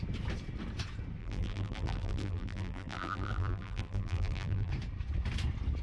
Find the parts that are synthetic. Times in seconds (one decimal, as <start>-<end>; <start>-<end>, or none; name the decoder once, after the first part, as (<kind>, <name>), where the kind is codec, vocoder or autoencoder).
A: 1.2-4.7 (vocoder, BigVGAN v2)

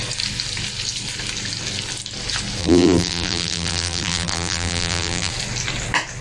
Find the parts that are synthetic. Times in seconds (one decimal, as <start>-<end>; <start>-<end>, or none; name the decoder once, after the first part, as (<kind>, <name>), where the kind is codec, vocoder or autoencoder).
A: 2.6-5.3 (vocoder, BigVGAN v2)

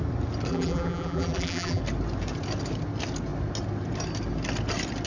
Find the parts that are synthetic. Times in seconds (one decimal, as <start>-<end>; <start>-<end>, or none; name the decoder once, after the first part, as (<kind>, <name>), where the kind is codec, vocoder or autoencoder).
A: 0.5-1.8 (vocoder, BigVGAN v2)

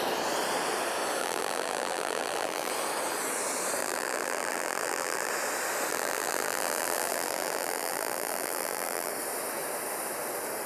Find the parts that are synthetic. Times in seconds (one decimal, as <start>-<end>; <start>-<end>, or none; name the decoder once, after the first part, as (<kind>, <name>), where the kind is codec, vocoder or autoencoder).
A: 1.2-2.7 (vocoder, BigVGAN v2); 3.8-5.3; 5.9-9.1

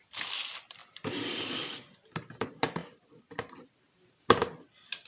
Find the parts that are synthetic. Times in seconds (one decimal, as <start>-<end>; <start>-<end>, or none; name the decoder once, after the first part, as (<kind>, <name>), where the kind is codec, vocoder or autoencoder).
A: 0.8-2.3 (vocoder, BigVGAN v2); 2.8-3.5

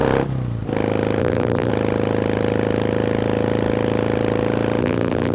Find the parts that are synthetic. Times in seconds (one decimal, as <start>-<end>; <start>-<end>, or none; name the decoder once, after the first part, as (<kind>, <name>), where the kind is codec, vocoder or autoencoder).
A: 1.2-1.7 (vocoder, BigVGAN v2); 4.8-5.3